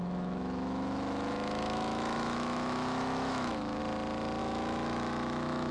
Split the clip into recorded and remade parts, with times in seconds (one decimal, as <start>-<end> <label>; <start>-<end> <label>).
0.0-3.8 remade; 3.8-4.4 recorded; 4.4-5.7 remade